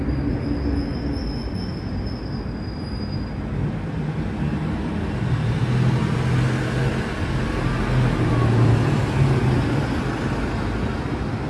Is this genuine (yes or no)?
yes